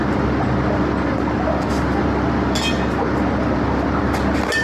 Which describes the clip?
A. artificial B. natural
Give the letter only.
B